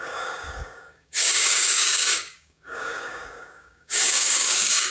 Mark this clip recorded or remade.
remade